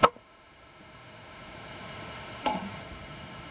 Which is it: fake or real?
fake